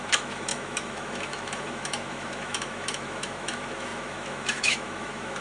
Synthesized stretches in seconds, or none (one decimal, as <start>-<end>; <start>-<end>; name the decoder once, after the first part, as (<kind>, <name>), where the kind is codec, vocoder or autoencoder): 0.0-5.4 (autoencoder, DAC-VAE)